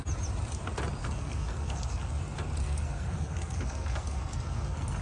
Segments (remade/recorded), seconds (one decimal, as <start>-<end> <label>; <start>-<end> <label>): 0.0-1.0 recorded; 1.0-2.2 remade; 2.2-2.6 recorded; 2.6-5.0 remade